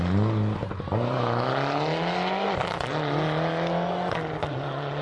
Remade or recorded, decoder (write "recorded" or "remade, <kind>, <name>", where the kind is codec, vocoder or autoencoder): recorded